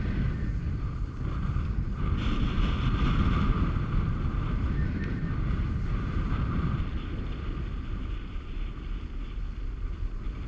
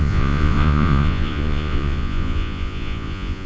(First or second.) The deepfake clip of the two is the second